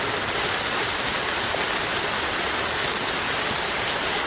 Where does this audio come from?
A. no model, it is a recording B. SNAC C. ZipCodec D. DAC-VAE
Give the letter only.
A